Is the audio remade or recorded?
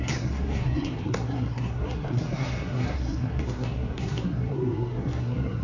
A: remade